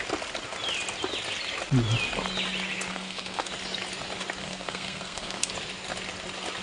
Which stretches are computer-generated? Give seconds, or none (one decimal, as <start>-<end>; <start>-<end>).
2.9-3.5; 4.4-5.5